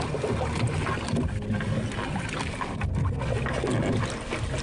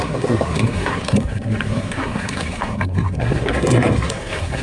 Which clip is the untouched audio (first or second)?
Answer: first